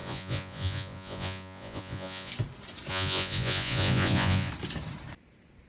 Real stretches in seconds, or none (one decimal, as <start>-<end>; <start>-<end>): 2.3-2.9; 4.5-5.7